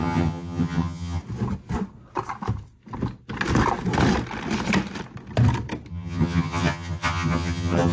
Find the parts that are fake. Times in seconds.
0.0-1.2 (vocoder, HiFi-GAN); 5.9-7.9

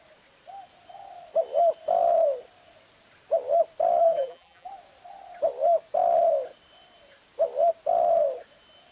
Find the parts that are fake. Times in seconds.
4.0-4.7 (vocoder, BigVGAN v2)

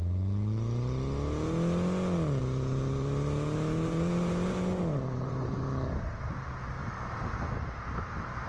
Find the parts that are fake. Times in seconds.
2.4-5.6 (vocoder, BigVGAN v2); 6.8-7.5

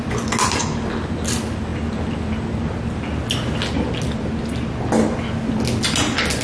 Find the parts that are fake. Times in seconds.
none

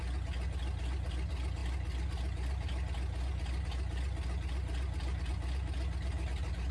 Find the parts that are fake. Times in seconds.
none

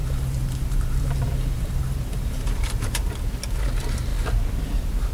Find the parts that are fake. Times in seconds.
0.0-3.1 (vocoder, BigVGAN v2)

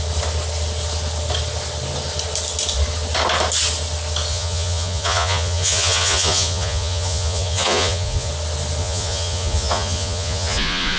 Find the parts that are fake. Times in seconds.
4.3-8.3 (vocoder, Vocos); 8.8-11.0